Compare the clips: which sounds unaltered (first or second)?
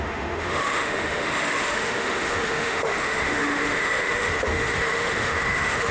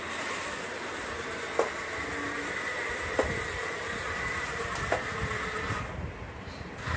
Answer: second